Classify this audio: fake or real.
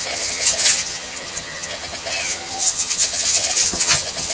fake